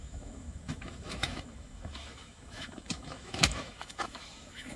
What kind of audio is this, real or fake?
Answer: fake